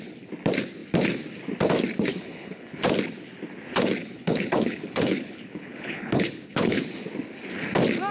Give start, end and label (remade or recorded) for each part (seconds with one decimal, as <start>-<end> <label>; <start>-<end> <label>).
0.0-2.1 recorded; 2.1-2.8 remade; 2.8-4.0 recorded; 4.0-6.8 remade; 6.8-8.1 recorded